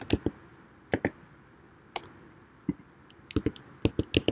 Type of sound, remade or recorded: recorded